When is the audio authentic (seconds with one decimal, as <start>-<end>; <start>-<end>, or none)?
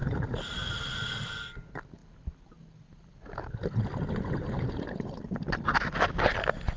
0.0-6.8